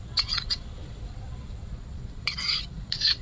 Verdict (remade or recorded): remade